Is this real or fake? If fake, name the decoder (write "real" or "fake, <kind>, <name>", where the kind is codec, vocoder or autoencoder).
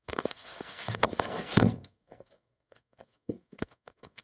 fake, codec, SNAC